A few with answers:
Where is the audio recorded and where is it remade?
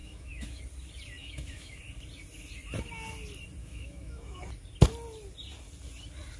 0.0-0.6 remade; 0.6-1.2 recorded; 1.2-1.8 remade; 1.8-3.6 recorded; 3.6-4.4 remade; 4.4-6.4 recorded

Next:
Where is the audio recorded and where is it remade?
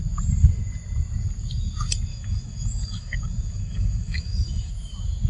0.0-2.1 recorded; 2.1-4.7 remade; 4.7-5.3 recorded